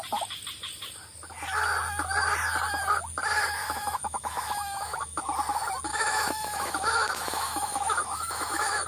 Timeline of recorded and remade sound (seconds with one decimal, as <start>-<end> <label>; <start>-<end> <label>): 0.0-3.6 recorded; 3.6-5.2 remade; 5.2-5.9 recorded; 5.9-8.9 remade